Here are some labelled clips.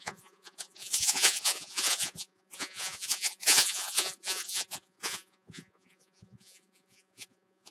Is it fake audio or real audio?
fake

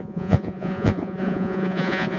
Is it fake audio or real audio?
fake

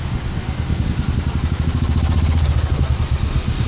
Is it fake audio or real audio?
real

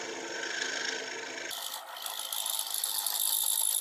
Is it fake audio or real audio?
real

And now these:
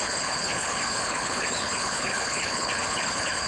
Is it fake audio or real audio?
fake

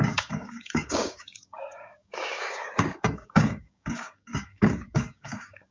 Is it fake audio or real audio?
fake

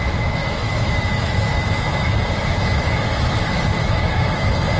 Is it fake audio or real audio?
fake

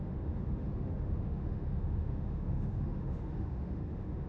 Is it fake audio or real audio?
fake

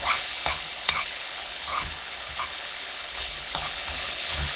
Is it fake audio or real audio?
fake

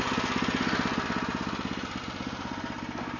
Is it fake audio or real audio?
real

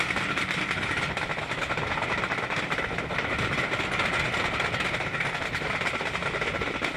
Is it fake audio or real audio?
real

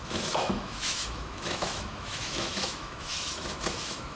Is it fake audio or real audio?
fake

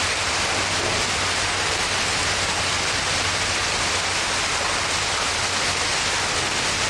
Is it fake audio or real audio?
real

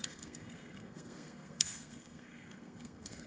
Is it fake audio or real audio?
fake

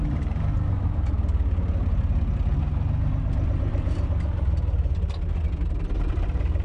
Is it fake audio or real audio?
real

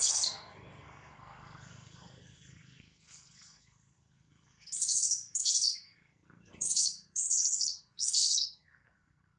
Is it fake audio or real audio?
fake